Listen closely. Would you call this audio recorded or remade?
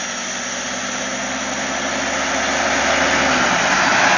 recorded